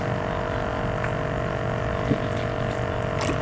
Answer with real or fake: real